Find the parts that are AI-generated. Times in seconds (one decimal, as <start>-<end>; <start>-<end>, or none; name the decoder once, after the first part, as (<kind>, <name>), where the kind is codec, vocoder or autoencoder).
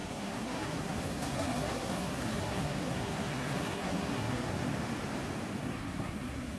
0.0-4.7 (codec, SNAC); 5.6-6.6